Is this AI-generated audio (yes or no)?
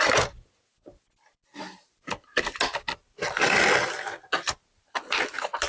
no